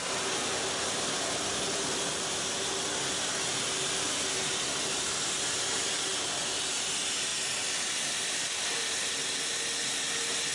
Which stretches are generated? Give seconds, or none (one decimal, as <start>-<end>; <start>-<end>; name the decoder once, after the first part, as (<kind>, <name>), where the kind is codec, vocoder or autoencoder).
none